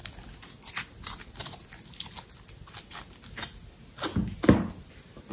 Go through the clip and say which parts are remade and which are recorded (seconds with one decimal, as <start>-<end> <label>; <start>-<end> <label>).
0.0-5.3 recorded